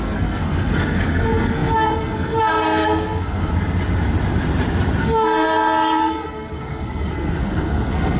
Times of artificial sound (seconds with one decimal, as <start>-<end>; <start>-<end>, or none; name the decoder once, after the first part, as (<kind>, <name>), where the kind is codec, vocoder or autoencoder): 0.0-3.5 (codec, SNAC); 5.0-8.2